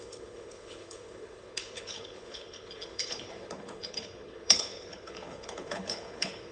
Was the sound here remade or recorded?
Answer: remade